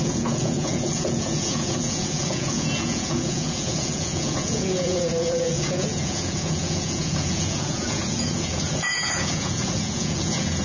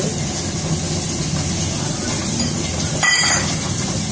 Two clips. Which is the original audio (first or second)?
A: second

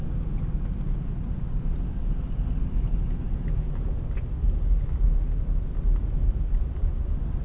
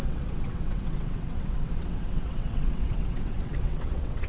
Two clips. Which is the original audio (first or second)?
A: first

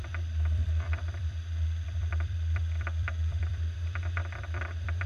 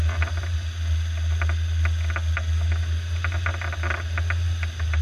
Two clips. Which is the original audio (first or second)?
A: second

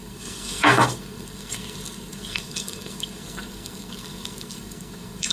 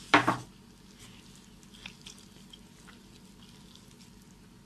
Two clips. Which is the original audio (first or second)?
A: second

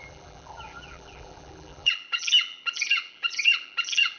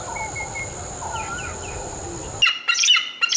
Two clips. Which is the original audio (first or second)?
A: second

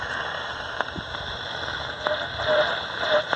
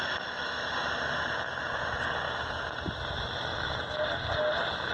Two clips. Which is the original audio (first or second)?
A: second